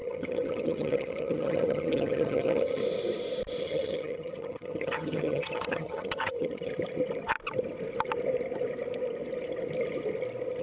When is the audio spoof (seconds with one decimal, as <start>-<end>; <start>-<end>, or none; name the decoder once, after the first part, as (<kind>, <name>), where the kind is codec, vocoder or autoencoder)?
0.0-2.8 (vocoder, HiFi-GAN); 3.6-6.7